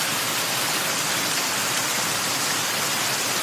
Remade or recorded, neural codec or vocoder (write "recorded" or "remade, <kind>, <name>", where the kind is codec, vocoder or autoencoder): recorded